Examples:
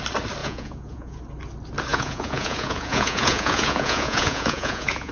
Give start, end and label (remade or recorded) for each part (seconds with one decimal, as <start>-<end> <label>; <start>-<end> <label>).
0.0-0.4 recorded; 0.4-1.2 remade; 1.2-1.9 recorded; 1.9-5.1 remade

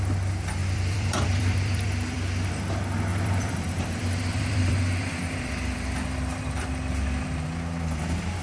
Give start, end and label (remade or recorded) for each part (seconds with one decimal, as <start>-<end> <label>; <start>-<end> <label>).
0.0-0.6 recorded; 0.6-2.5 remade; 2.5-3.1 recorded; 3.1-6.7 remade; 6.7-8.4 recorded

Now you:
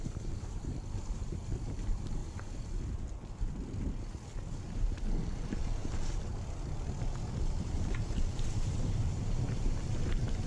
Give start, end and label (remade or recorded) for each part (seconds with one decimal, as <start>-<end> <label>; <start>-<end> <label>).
0.0-2.2 remade; 2.2-4.7 recorded; 4.7-6.3 remade; 6.3-7.6 recorded; 7.6-10.5 remade

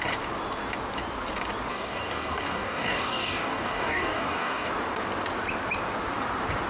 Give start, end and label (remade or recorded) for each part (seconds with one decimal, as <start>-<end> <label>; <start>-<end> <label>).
0.0-1.7 recorded; 1.7-4.7 remade; 4.7-6.7 recorded